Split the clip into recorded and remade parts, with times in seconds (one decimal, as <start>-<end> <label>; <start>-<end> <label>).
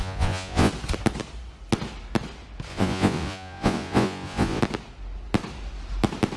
0.0-0.7 remade; 0.7-2.7 recorded; 2.7-4.6 remade; 4.6-6.4 recorded